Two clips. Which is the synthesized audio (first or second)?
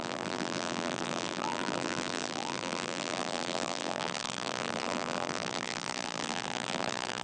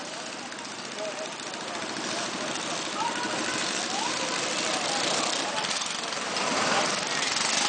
first